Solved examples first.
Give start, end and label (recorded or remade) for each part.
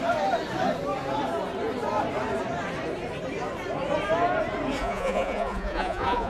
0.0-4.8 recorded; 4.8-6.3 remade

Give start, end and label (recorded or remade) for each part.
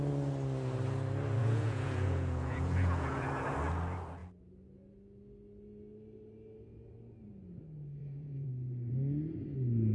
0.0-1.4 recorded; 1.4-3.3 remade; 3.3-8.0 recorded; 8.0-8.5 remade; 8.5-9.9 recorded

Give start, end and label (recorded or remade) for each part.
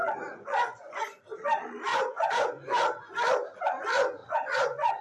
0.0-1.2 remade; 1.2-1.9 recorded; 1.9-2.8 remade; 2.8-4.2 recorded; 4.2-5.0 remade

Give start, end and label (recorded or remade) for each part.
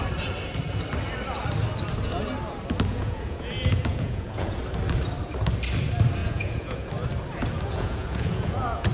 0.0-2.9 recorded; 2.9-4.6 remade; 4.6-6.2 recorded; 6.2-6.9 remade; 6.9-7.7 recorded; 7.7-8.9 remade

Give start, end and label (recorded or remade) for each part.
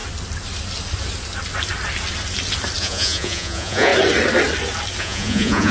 0.0-2.8 recorded; 2.8-3.9 remade; 3.9-5.0 recorded; 5.0-5.7 remade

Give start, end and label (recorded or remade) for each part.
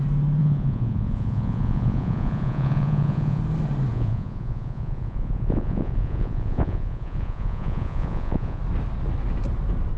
0.0-0.4 recorded; 0.4-3.4 remade; 3.4-3.9 recorded; 3.9-8.6 remade; 8.6-10.0 recorded